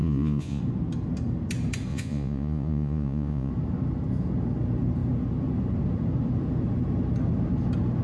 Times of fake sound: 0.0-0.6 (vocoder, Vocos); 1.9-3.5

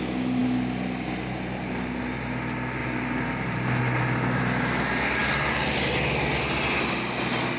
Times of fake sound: 2.8-3.8 (vocoder, BigVGAN v2)

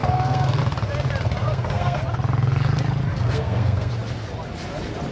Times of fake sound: 0.0-0.6 (codec, SNAC); 1.4-2.0; 3.1-3.9

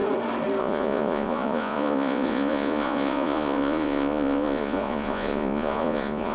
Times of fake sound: 0.6-6.3 (vocoder, Vocos)

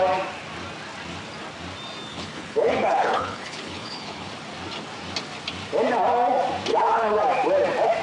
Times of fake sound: 2.1-4.3 (codec, HILCodec); 6.7-7.2